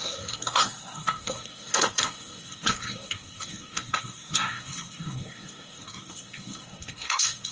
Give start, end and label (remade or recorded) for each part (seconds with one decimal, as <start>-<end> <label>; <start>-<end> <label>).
0.0-7.5 remade